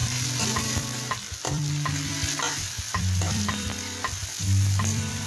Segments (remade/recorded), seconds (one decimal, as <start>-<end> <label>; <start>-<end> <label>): 0.0-5.3 remade